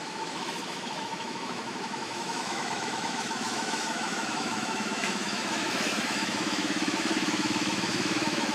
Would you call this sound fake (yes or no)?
yes